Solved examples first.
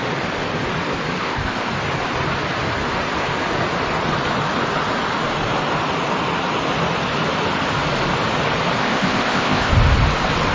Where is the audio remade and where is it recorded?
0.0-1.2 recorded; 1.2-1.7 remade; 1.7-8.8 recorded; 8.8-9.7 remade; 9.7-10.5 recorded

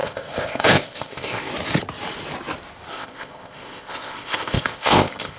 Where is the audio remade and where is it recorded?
0.0-1.5 remade; 1.5-2.9 recorded; 2.9-5.4 remade

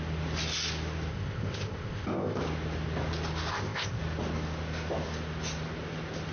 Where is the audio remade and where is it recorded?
0.0-1.1 recorded; 1.1-2.4 remade; 2.4-3.5 recorded; 3.5-4.0 remade; 4.0-6.3 recorded

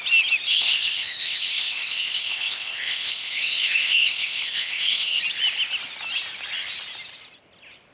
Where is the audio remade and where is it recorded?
0.0-0.5 recorded; 0.5-5.2 remade; 5.2-7.9 recorded

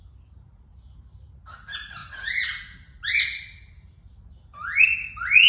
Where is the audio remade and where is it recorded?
0.0-5.5 recorded

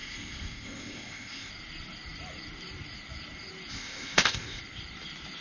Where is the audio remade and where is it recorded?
0.0-1.5 remade; 1.5-3.7 recorded; 3.7-4.6 remade; 4.6-5.4 recorded

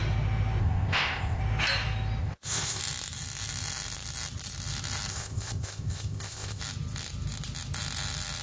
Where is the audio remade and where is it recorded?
0.0-0.6 recorded; 0.6-1.4 remade; 1.4-2.2 recorded; 2.2-2.8 remade; 2.8-5.1 recorded; 5.1-6.6 remade; 6.6-8.4 recorded